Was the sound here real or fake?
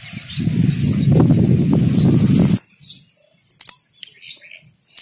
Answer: real